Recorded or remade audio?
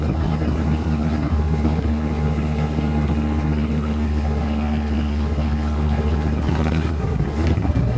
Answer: remade